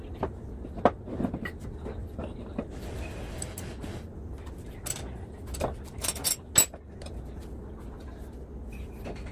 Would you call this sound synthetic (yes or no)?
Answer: no